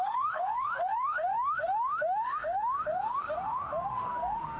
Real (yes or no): no